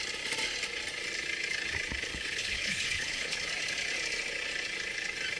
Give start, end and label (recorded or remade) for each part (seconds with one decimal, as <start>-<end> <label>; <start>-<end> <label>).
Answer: 0.0-2.1 recorded; 2.1-3.5 remade; 3.5-5.4 recorded